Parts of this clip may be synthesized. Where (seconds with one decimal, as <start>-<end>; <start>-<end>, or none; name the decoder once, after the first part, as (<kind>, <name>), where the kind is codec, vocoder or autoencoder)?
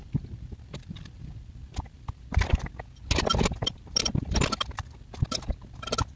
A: 0.0-2.2 (vocoder, BigVGAN v2)